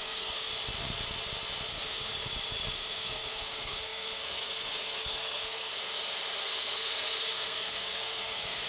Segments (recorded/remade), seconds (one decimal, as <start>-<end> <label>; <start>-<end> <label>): 0.0-0.5 remade; 0.5-1.7 recorded; 1.7-2.1 remade; 2.1-2.7 recorded; 2.7-5.7 remade; 5.7-6.4 recorded; 6.4-8.7 remade